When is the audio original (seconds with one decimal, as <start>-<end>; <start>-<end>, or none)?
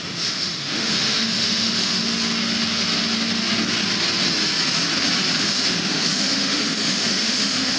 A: 2.0-5.4